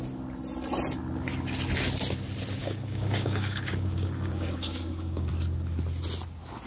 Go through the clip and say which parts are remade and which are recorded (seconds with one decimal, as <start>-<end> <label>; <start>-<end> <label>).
0.0-2.6 recorded; 2.6-5.3 remade; 5.3-6.7 recorded